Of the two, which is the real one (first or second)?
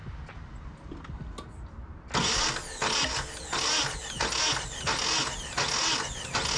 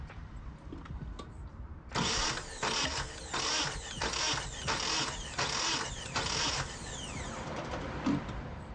first